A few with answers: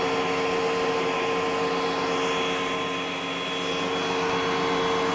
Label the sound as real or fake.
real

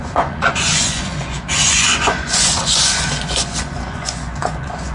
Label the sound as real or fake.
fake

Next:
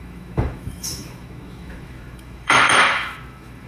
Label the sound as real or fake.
fake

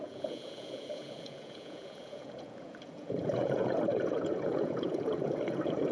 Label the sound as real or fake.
fake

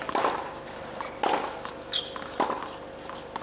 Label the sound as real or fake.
real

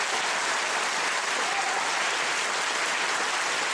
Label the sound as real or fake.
real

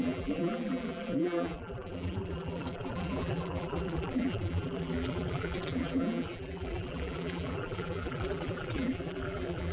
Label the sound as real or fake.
fake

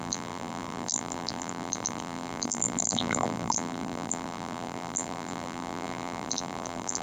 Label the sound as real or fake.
fake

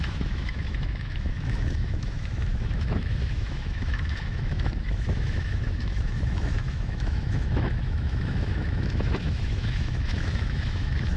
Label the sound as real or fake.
fake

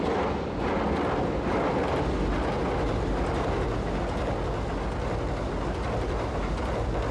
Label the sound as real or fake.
real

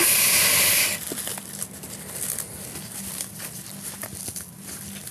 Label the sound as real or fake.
real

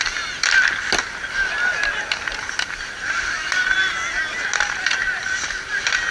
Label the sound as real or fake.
real